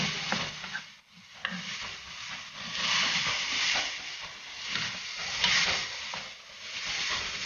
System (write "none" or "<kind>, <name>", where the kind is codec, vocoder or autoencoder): none